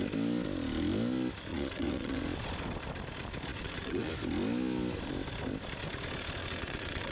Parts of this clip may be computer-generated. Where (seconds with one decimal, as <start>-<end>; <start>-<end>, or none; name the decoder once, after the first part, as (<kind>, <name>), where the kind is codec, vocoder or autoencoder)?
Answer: 1.5-2.2 (vocoder, WaveNeXt); 3.5-4.1; 6.4-7.1